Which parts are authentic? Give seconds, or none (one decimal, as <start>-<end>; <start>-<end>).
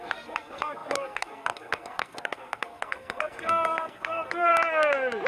4.5-5.3